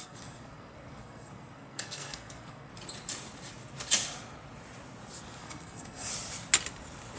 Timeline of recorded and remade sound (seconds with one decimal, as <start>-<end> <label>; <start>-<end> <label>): 0.0-2.7 remade; 2.7-5.4 recorded; 5.4-6.1 remade; 6.1-7.2 recorded